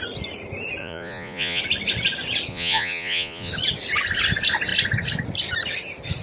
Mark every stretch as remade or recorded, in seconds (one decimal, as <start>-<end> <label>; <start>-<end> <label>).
0.0-0.8 recorded; 0.8-1.6 remade; 1.6-2.5 recorded; 2.5-3.5 remade; 3.5-6.2 recorded

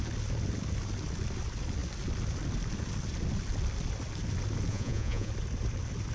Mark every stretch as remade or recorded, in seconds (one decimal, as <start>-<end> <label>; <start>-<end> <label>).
0.0-4.7 recorded; 4.7-5.3 remade; 5.3-6.1 recorded

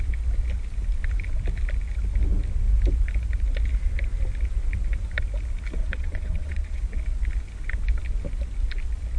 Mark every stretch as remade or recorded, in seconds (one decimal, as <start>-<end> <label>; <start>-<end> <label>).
0.0-5.8 recorded; 5.8-6.8 remade; 6.8-9.2 recorded

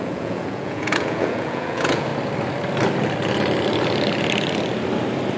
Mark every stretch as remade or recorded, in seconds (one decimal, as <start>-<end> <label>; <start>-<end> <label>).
0.0-2.1 remade; 2.1-5.4 recorded

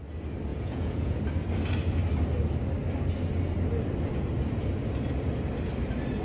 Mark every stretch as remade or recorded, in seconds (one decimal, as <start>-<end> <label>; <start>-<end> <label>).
0.0-0.5 recorded; 0.5-1.2 remade; 1.2-6.2 recorded

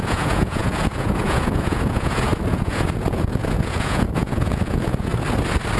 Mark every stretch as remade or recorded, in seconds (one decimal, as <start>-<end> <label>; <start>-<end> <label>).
0.0-5.1 remade; 5.1-5.8 recorded

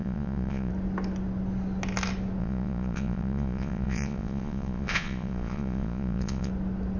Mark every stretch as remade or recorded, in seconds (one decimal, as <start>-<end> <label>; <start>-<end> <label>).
0.0-0.7 remade; 0.7-2.4 recorded; 2.4-6.5 remade; 6.5-7.0 recorded

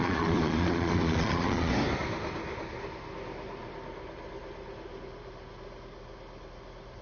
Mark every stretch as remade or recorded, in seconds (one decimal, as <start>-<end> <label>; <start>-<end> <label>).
0.0-1.7 remade; 1.7-7.0 recorded